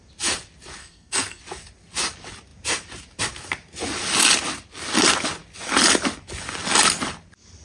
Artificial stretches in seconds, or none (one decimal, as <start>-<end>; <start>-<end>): 0.8-1.4